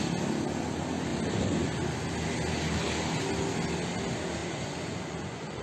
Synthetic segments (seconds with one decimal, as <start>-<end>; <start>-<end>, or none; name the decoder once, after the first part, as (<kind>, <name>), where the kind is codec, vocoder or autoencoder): 4.4-5.6 (vocoder, Vocos)